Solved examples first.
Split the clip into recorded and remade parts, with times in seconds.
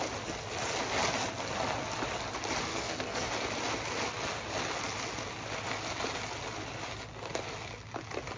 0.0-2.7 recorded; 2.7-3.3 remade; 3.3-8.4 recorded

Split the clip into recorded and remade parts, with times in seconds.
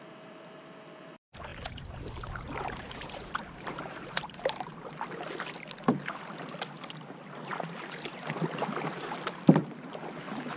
0.0-4.7 remade; 4.7-9.6 recorded; 9.6-10.6 remade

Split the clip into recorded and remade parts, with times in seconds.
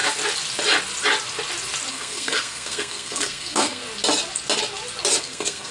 0.0-1.9 recorded; 1.9-3.8 remade; 3.8-5.2 recorded; 5.2-5.7 remade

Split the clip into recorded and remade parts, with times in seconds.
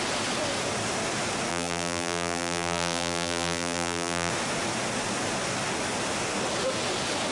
0.0-1.5 recorded; 1.5-4.3 remade; 4.3-7.3 recorded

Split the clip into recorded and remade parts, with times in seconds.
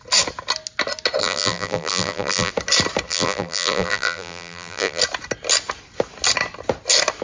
0.0-1.2 recorded; 1.2-2.5 remade; 2.5-3.1 recorded; 3.1-5.0 remade; 5.0-7.2 recorded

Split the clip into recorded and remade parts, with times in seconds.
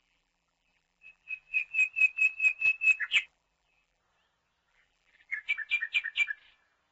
0.0-1.7 remade; 1.7-3.0 recorded; 3.0-4.0 remade; 4.0-4.7 recorded; 4.7-5.5 remade; 5.5-6.9 recorded